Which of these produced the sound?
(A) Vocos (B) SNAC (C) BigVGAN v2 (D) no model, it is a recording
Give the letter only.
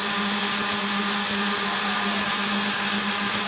D